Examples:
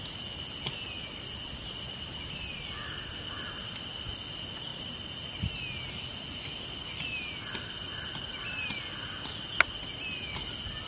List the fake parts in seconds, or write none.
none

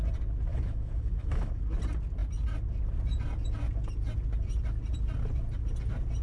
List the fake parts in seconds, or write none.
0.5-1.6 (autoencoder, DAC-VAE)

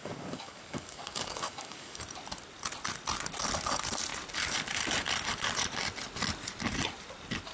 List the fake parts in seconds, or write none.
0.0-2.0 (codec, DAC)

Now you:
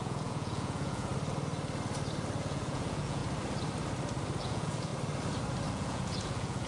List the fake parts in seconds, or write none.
0.0-1.1 (vocoder, Vocos); 2.4-3.2; 4.4-4.9; 5.7-6.7

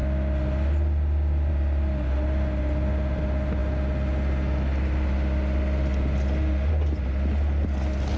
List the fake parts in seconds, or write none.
none